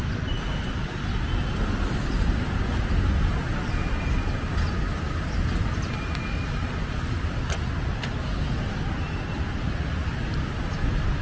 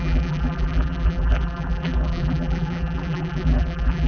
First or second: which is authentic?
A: first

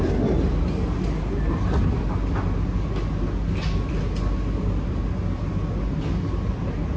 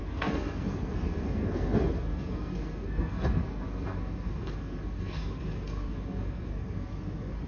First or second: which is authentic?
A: first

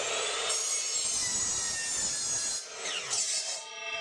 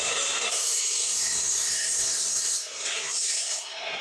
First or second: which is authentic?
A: first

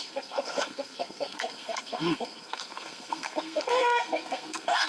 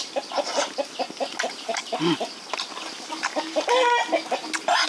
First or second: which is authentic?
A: second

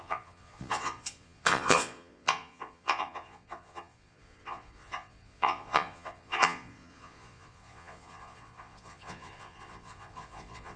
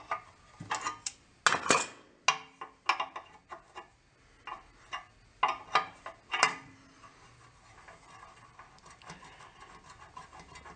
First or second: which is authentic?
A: second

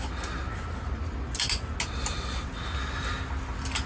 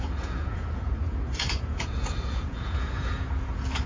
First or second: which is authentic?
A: first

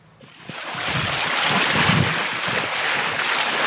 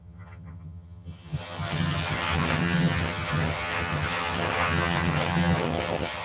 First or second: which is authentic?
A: first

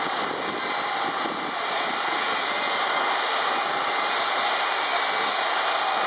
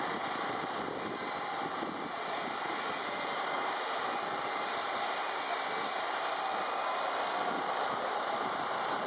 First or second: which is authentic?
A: first